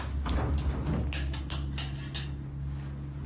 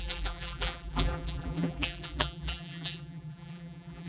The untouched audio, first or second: first